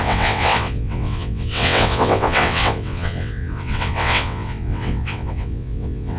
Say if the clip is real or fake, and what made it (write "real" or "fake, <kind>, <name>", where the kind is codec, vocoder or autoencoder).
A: fake, vocoder, WaveNeXt